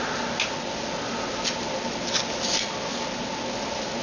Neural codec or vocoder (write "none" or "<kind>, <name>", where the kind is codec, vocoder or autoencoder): none